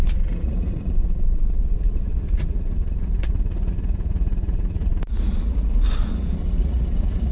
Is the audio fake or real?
fake